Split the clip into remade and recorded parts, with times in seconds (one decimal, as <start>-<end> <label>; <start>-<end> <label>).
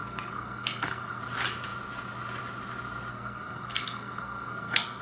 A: 0.0-1.2 remade; 1.2-3.1 recorded; 3.1-5.0 remade